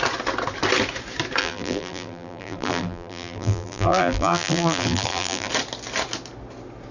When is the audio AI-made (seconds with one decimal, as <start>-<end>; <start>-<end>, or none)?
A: 1.4-5.5